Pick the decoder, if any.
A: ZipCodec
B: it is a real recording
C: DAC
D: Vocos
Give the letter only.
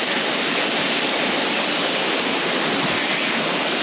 B